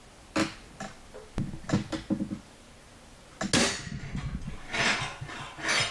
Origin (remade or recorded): recorded